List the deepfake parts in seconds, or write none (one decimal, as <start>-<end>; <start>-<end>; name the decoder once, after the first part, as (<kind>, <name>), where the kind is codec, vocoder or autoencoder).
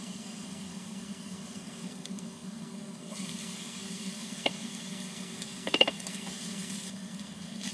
0.0-7.7 (codec, SNAC)